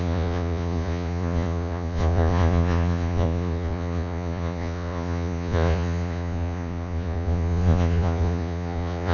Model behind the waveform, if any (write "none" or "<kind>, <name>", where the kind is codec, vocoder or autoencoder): vocoder, Vocos